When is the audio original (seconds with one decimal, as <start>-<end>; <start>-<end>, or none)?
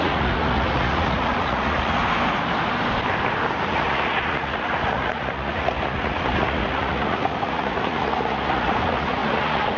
2.0-3.7